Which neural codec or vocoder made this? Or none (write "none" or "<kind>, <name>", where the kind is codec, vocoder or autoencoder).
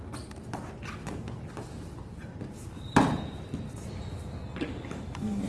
none